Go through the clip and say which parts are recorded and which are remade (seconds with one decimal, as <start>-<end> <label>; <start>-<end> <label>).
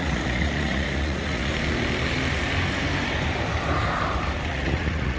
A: 0.0-1.5 remade; 1.5-4.5 recorded; 4.5-5.2 remade